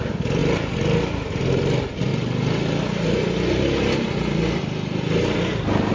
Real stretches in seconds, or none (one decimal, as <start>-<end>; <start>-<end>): 0.0-5.9